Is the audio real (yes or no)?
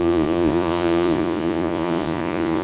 no